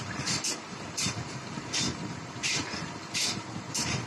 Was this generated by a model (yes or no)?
yes